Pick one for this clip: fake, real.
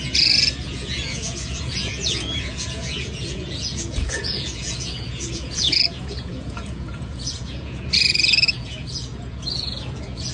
fake